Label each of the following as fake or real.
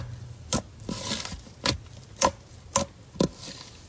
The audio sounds real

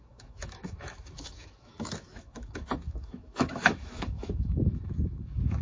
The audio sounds fake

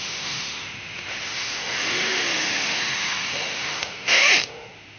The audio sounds fake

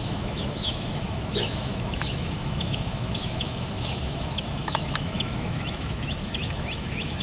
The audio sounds fake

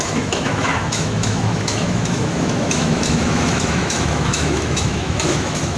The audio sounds fake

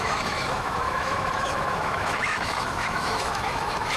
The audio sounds fake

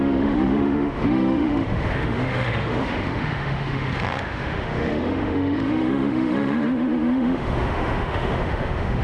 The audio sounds fake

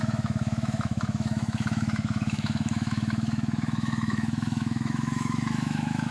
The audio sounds fake